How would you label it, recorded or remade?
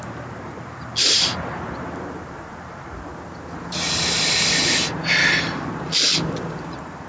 remade